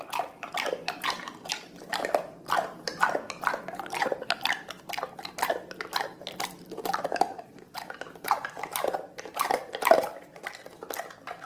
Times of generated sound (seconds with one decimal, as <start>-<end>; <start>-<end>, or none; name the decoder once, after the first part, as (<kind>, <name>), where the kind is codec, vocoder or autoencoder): 0.0-10.3 (vocoder, BigVGAN v2)